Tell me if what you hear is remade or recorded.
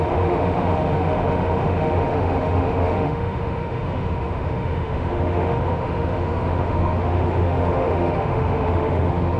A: remade